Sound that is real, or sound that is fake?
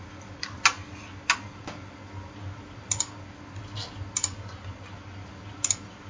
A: real